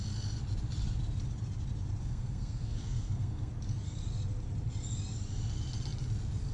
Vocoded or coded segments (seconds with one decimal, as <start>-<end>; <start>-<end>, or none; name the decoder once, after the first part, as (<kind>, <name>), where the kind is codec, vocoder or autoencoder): 2.0-3.5 (codec, SNAC)